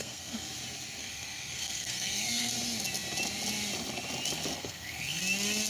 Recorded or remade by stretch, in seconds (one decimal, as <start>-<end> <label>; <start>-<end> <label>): 0.0-0.5 remade; 0.5-1.0 recorded; 1.0-2.5 remade; 2.5-4.5 recorded; 4.5-5.2 remade; 5.2-5.7 recorded